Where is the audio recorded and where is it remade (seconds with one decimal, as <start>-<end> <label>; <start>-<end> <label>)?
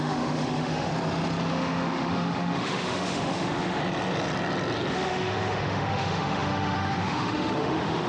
0.0-0.9 remade; 0.9-1.5 recorded; 1.5-3.8 remade; 3.8-4.9 recorded; 4.9-8.1 remade